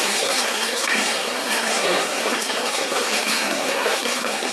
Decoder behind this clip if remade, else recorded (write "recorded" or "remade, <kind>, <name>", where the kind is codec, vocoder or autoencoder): remade, codec, SNAC